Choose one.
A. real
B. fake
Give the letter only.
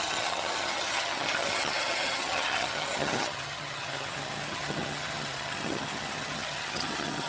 B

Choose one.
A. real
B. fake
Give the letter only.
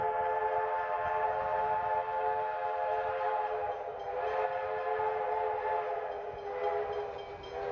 A